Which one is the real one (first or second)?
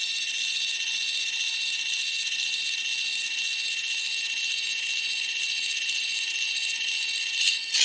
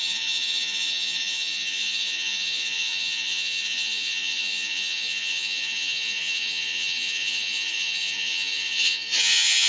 first